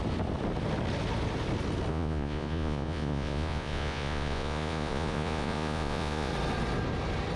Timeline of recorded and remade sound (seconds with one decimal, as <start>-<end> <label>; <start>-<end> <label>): 0.0-1.9 recorded; 1.9-6.3 remade; 6.3-7.4 recorded